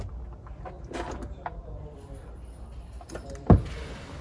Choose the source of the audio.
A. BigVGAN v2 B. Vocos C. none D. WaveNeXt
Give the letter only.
C